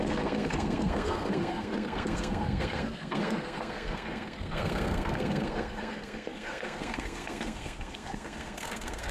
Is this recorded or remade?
remade